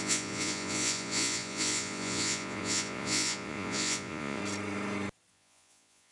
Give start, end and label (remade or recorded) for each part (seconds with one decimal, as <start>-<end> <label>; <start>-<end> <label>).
0.0-4.4 remade; 4.4-5.3 recorded; 5.3-6.1 remade